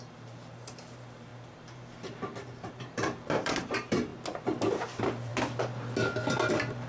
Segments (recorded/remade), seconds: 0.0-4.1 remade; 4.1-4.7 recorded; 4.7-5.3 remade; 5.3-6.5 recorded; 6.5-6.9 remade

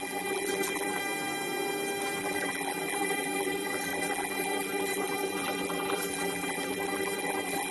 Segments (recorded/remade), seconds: 0.0-1.0 remade; 1.0-2.2 recorded; 2.2-7.7 remade

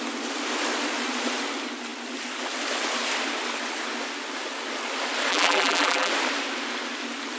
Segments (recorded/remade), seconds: 0.0-5.3 recorded; 5.3-6.1 remade; 6.1-7.4 recorded

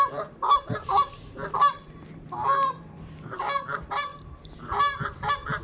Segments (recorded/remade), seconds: 0.0-5.6 remade

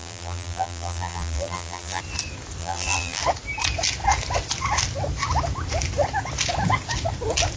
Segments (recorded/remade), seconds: 0.0-2.0 remade; 2.0-2.6 recorded; 2.6-3.2 remade; 3.2-7.6 recorded